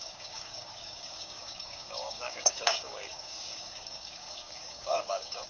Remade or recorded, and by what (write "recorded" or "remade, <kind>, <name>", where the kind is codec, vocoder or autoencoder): remade, codec, DAC